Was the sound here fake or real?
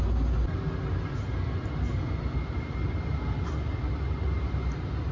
real